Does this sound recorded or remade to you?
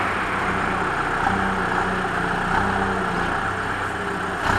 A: recorded